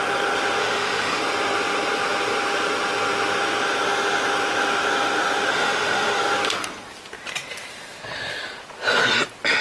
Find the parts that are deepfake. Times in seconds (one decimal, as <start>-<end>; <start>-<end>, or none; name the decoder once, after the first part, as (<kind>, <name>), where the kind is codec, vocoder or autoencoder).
0.6-1.2 (autoencoder, DAC-VAE); 5.5-6.2

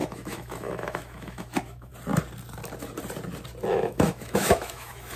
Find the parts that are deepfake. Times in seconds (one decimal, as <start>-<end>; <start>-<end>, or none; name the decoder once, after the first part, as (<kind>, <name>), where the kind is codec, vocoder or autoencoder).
0.0-1.9 (autoencoder, DAC-VAE); 3.7-5.2

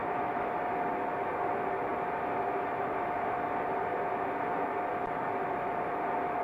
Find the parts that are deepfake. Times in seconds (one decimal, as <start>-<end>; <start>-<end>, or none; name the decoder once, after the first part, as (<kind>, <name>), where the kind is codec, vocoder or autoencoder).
0.0-0.5 (autoencoder, DAC-VAE)

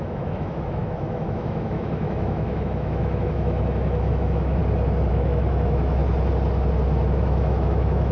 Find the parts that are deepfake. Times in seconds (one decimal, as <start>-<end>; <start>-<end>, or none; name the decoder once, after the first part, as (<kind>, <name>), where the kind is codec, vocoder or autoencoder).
0.0-4.6 (autoencoder, DAC-VAE); 5.1-6.0; 7.1-8.1

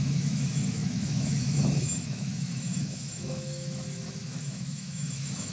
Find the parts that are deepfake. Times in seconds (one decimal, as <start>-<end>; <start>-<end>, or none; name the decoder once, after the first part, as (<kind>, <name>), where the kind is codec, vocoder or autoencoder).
0.0-5.5 (autoencoder, DAC-VAE)

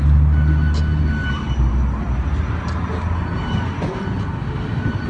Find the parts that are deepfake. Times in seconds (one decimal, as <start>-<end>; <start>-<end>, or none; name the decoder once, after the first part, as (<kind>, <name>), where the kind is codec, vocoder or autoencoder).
none

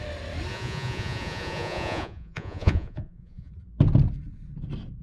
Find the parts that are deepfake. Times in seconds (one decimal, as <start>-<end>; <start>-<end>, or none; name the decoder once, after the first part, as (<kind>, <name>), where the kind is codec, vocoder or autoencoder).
0.5-3.5 (vocoder, Vocos)